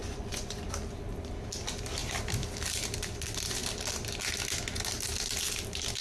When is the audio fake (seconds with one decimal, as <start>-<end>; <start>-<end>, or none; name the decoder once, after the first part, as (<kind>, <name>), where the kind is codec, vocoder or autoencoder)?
0.0-0.7 (vocoder, Vocos)